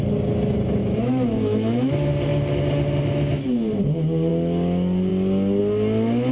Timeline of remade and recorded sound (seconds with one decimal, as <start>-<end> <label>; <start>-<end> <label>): 0.0-0.8 recorded; 0.8-1.9 remade; 1.9-6.3 recorded